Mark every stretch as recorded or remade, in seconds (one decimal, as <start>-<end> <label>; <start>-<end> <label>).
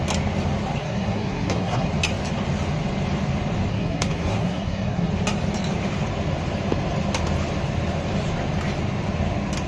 0.0-0.8 recorded; 0.8-1.9 remade; 1.9-3.7 recorded; 3.7-5.1 remade; 5.1-9.7 recorded